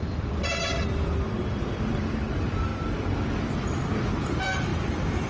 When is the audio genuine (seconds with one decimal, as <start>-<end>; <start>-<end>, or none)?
4.7-5.3